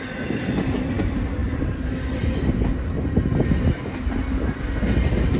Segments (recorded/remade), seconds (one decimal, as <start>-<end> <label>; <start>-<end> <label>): 0.0-5.4 recorded